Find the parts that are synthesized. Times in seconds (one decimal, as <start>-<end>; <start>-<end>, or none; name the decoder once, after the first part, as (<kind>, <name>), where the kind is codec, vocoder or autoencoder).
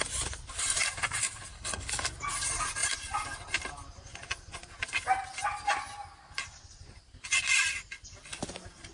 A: 1.5-2.0 (codec, HILCodec)